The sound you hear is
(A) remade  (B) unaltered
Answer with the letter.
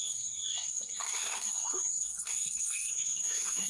A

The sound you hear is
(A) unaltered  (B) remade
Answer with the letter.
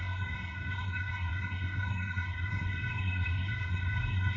B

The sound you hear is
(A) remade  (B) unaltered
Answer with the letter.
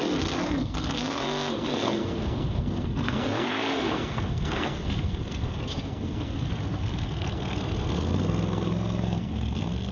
A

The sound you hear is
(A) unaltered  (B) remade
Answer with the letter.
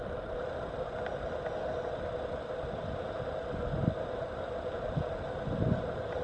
A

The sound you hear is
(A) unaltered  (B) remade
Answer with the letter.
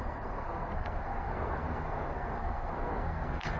B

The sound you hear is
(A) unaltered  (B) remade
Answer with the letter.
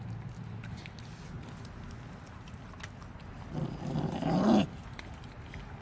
A